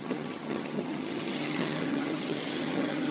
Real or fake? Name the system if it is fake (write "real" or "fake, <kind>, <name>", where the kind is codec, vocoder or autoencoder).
fake, vocoder, HiFi-GAN